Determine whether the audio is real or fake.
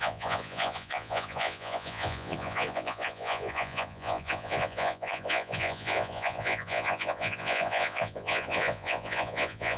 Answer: fake